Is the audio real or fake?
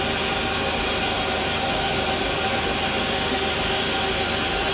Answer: real